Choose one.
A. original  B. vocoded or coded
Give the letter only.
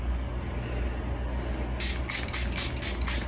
A